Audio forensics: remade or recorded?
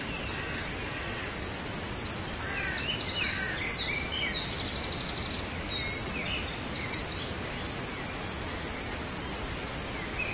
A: recorded